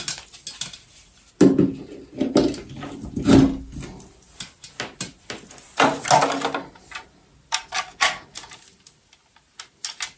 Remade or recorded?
recorded